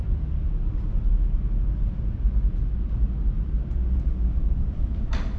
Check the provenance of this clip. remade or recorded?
recorded